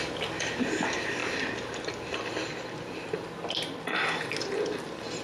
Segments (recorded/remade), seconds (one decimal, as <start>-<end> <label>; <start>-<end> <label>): 0.0-5.2 recorded